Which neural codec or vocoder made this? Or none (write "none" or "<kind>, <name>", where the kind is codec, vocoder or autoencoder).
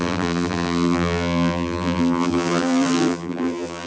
vocoder, BigVGAN v2